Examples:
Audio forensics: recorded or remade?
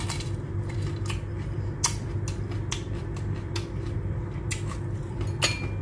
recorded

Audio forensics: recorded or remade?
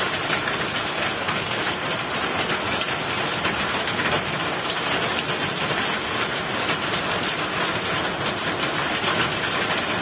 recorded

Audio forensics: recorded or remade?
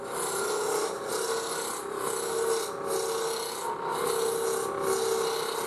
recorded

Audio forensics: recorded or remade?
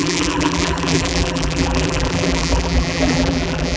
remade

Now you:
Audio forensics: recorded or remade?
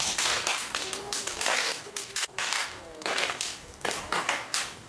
remade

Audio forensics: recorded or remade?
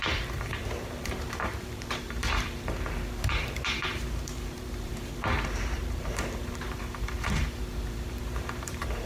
remade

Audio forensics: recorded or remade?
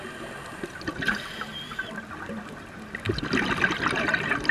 recorded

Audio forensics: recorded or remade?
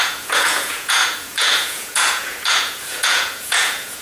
remade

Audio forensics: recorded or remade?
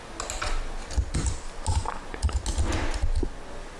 recorded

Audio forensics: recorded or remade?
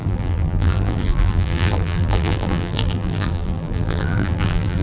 remade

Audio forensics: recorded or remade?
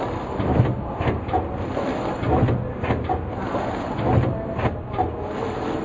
recorded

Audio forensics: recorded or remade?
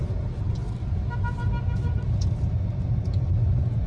recorded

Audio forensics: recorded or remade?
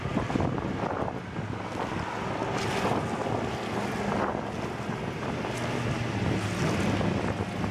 recorded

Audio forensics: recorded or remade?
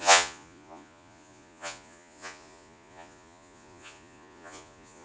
remade